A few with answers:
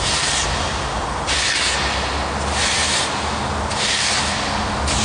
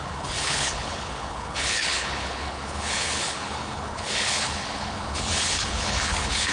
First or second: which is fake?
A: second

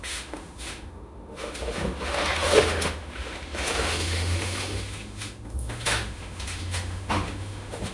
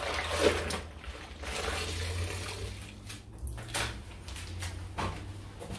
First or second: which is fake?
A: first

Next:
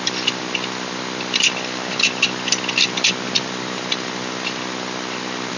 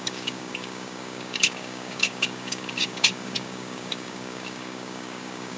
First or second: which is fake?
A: second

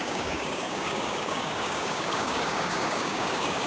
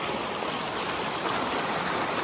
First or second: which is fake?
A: first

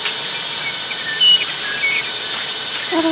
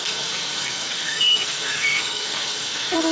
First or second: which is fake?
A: second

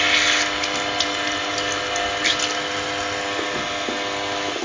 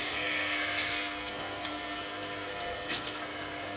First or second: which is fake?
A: second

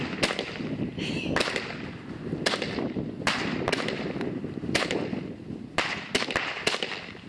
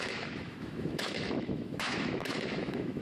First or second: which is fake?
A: second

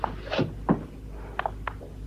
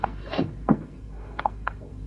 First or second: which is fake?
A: second